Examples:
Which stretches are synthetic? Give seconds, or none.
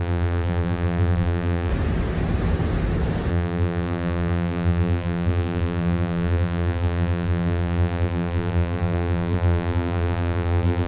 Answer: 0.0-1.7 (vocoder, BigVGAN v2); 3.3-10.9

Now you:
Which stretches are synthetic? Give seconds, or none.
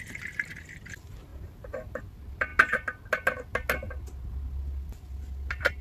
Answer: 1.3-2.0 (vocoder, BigVGAN v2)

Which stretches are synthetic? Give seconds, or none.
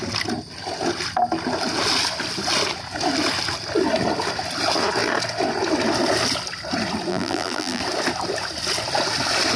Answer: 7.1-7.8 (vocoder, BigVGAN v2)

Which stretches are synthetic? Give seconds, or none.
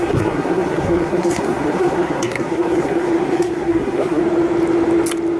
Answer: 0.0-4.2 (codec, SNAC)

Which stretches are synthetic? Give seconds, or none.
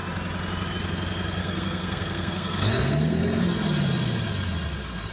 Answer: 1.4-3.2 (codec, SNAC)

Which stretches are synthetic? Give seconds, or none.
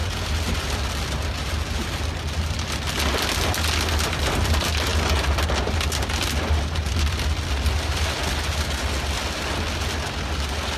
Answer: none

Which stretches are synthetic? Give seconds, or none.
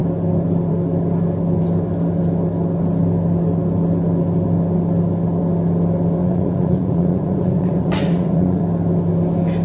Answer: 6.2-8.6 (vocoder, Vocos)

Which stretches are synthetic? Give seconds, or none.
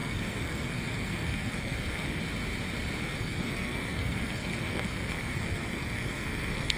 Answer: 0.0-2.2 (codec, SNAC); 3.0-6.8